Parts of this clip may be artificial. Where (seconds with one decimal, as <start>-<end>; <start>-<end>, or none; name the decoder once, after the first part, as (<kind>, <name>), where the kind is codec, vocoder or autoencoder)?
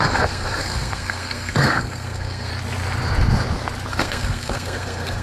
0.0-2.5 (codec, SNAC); 3.9-5.2